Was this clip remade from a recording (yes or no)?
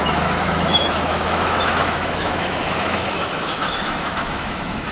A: yes